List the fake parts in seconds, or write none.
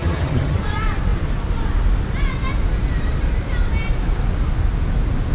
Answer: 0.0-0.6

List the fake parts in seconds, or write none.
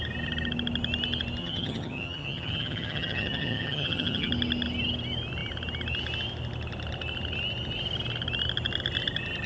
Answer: 1.4-4.3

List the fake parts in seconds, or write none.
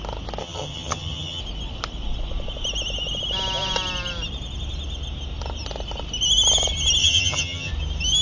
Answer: 0.4-1.4; 7.0-7.7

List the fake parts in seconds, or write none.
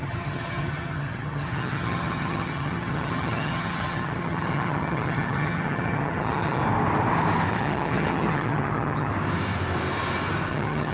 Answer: 0.0-6.6; 7.5-9.1; 10.5-10.9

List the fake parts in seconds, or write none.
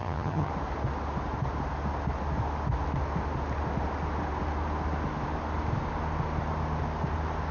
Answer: 0.0-0.5